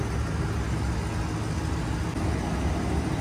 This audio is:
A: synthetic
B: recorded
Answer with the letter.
B